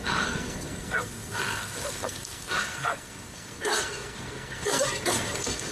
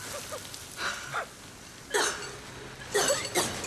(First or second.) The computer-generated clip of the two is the first